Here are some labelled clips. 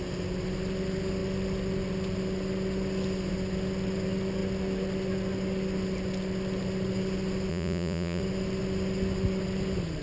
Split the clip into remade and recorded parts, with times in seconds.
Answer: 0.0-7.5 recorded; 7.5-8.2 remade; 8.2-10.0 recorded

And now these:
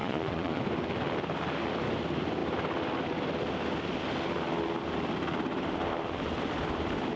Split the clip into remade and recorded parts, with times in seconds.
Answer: 0.0-0.6 remade; 0.6-7.2 recorded

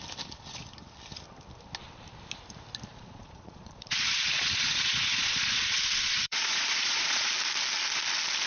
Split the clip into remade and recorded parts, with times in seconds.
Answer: 0.0-2.9 recorded; 2.9-7.3 remade; 7.3-8.5 recorded